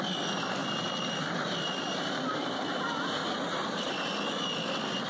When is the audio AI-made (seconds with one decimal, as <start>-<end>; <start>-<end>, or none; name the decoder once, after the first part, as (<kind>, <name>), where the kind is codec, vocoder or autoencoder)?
none